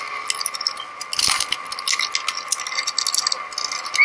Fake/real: real